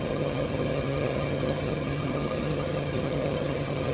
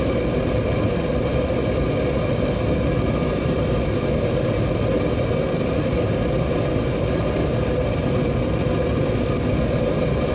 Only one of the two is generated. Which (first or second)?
first